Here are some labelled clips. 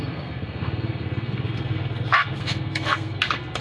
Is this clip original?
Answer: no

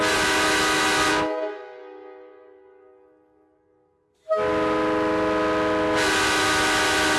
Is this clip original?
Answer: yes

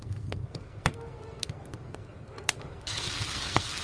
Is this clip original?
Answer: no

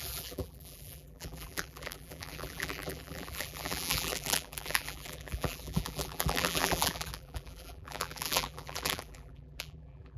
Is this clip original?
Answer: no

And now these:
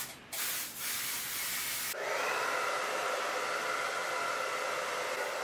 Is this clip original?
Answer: no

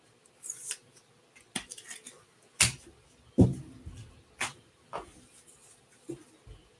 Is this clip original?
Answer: yes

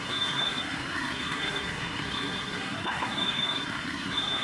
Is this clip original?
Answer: no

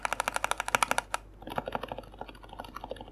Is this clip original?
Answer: yes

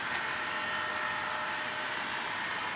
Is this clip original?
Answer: yes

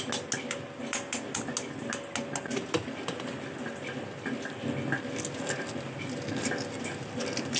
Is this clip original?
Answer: yes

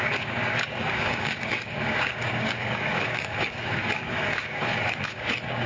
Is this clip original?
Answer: no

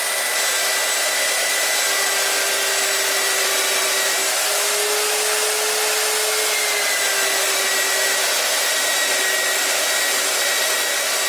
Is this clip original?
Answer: yes